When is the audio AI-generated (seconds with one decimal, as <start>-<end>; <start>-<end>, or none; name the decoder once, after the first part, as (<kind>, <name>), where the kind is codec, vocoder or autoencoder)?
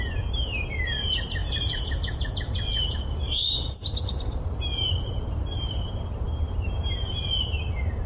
0.0-8.1 (vocoder, BigVGAN v2)